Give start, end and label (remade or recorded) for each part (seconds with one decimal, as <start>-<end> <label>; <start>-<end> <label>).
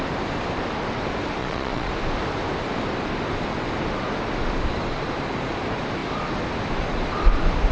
0.0-1.4 recorded; 1.4-1.9 remade; 1.9-7.7 recorded